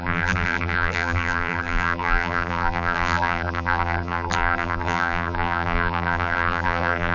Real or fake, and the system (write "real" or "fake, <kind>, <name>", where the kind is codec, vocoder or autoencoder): fake, vocoder, BigVGAN v2